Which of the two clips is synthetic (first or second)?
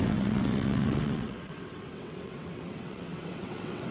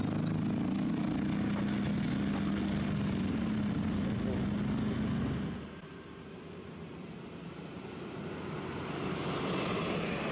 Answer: first